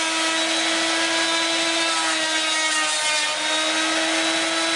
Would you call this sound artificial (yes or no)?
no